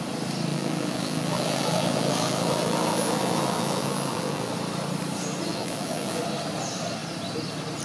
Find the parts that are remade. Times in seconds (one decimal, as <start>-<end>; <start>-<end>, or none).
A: 0.5-4.5; 5.5-6.2